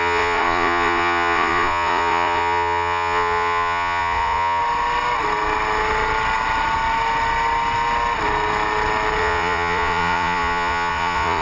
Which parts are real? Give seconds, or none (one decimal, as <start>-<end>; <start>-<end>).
4.6-9.2